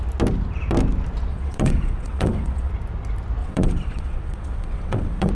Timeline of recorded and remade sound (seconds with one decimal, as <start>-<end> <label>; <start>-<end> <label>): 0.0-1.3 recorded; 1.3-2.7 remade; 2.7-3.4 recorded; 3.4-5.3 remade